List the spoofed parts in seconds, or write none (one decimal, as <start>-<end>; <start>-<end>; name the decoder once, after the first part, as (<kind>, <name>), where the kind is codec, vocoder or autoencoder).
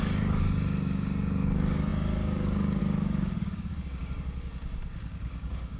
0.0-5.8 (codec, DAC)